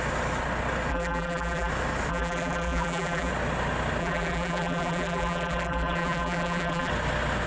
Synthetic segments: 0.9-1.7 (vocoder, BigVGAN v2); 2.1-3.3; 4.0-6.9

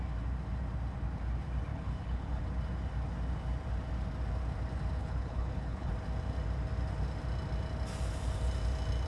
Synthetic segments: 1.7-2.4 (codec, HILCodec); 5.0-5.9

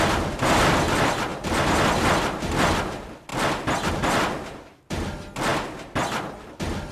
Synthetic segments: none

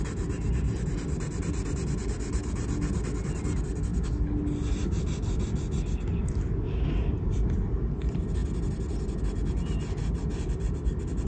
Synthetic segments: none